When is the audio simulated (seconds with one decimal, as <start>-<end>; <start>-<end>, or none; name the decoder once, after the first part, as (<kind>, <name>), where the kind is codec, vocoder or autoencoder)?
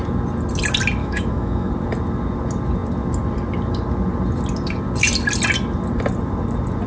1.0-1.7 (autoencoder, DAC-VAE)